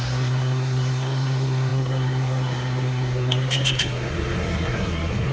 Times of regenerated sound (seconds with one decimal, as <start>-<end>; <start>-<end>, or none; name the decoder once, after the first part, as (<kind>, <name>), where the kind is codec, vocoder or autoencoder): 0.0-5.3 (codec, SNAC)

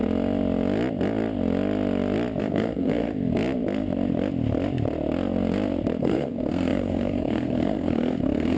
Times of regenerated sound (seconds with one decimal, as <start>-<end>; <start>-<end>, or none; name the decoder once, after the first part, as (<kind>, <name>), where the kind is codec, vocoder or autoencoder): 2.4-3.1 (codec, SNAC); 6.0-8.6

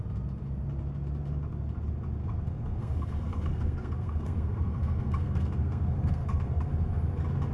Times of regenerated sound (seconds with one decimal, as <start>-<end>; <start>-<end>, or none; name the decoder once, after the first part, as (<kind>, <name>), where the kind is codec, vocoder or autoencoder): 2.2-6.7 (codec, SNAC)

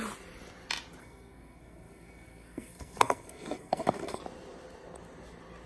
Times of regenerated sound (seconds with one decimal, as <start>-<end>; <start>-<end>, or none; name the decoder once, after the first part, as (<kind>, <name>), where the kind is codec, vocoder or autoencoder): 1.0-4.2 (codec, SNAC)